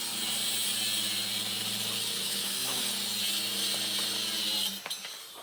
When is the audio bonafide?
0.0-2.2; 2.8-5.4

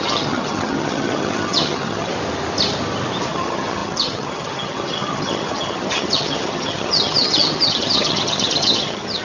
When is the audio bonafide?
2.1-3.3

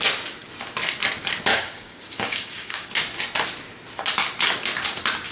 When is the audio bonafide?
0.0-1.5; 2.9-5.3

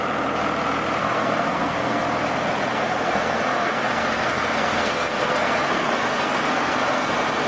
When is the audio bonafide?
0.0-1.0; 2.0-2.7; 7.1-7.5

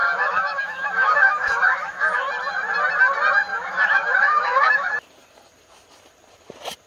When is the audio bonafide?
2.3-3.5; 4.9-6.9

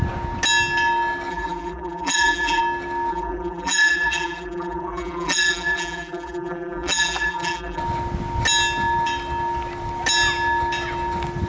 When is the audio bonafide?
0.0-1.3; 2.6-3.1; 7.8-11.5

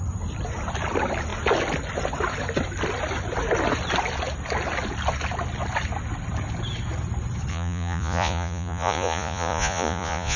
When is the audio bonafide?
0.0-7.5

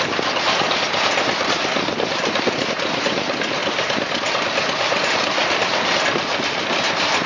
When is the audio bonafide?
0.0-7.3